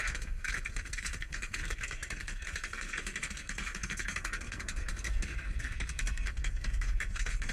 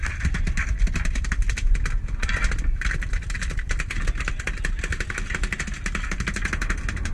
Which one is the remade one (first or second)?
first